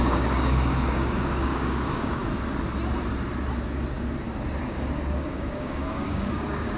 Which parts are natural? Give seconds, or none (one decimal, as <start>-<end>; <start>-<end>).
2.2-4.6